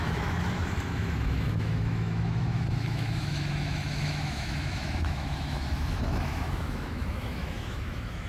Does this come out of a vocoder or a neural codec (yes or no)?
yes